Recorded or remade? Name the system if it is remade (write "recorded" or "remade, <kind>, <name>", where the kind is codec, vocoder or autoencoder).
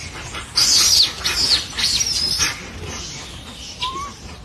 recorded